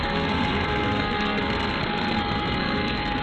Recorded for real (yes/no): no